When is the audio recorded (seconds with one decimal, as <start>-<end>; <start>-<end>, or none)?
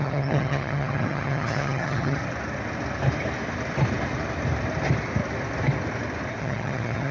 2.2-6.4